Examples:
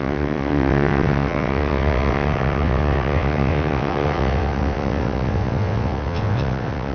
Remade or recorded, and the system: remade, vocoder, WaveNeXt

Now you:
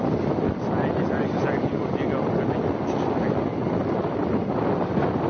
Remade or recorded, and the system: recorded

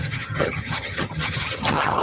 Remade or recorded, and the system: remade, vocoder, HiFi-GAN